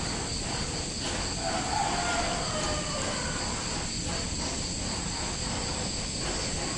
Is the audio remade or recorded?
recorded